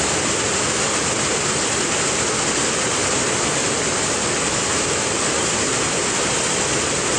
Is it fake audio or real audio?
real